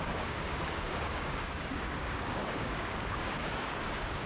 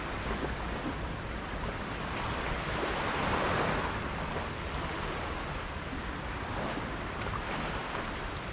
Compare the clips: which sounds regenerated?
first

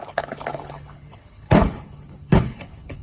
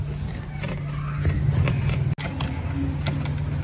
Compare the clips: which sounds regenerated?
first